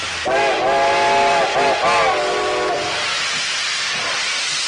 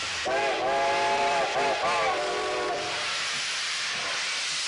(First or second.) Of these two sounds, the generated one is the second